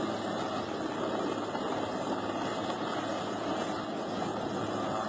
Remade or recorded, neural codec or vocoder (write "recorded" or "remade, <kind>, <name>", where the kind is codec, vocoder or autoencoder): recorded